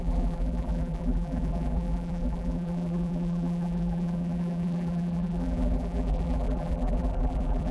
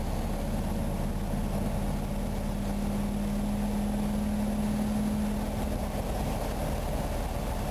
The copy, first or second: first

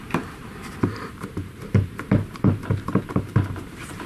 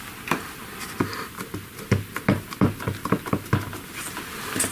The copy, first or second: first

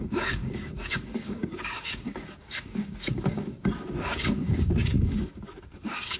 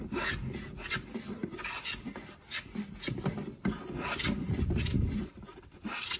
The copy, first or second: first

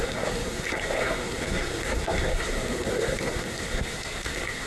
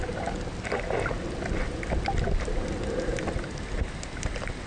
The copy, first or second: first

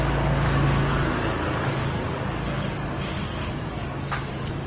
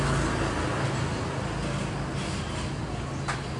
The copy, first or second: first